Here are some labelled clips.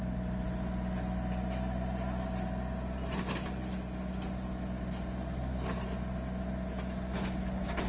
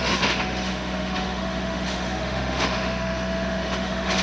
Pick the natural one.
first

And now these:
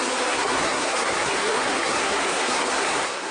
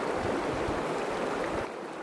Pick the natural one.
second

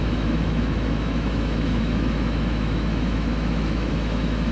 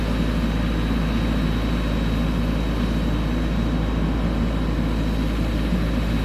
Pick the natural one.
second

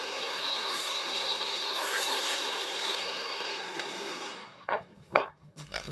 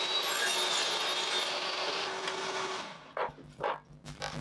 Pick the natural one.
second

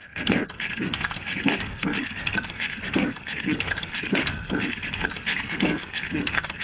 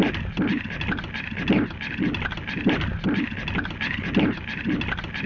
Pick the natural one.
second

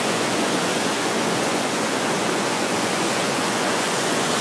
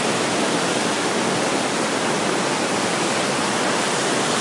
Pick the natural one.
second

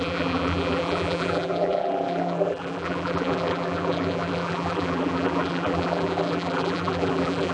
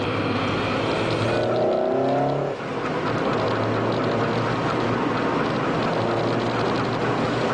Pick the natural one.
second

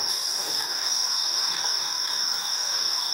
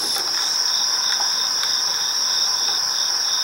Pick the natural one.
second